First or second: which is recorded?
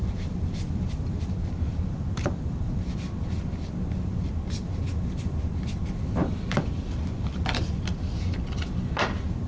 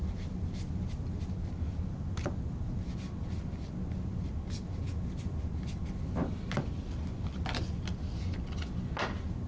second